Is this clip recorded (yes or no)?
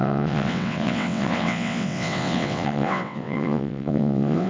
no